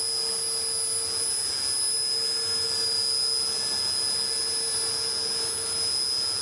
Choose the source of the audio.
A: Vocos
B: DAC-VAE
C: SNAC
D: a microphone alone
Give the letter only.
D